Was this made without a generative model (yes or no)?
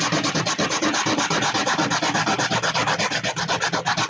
yes